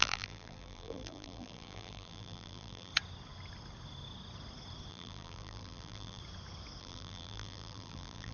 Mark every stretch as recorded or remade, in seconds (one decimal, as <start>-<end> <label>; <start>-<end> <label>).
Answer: 0.0-2.9 remade; 2.9-4.9 recorded; 4.9-6.2 remade; 6.2-6.8 recorded; 6.8-8.3 remade